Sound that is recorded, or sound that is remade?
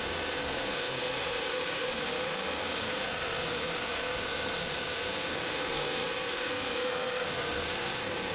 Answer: remade